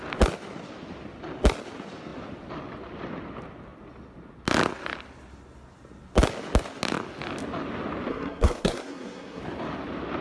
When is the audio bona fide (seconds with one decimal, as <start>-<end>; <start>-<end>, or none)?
0.0-8.1; 9.4-10.2